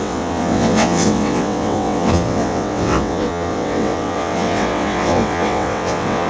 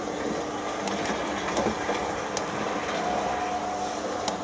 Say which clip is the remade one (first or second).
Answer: first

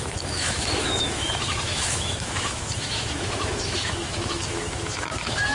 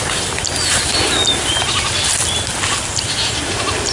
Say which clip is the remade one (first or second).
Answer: first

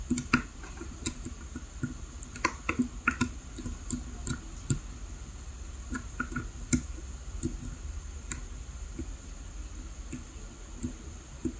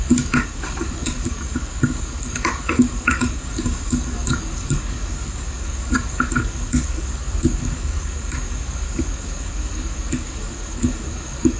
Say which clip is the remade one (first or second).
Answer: second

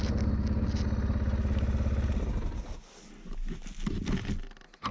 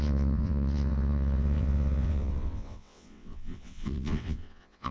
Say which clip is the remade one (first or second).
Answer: second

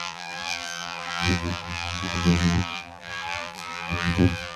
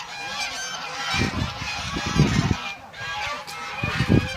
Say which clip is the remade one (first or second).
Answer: first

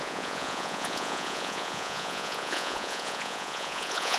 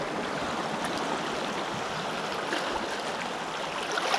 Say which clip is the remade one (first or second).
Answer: first